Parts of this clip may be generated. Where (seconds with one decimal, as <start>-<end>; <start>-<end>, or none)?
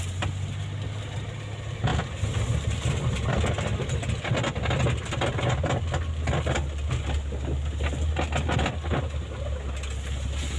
none